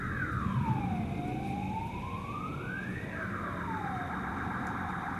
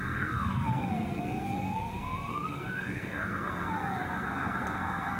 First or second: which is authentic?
first